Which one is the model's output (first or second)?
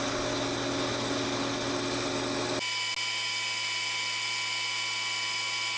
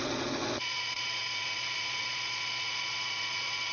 second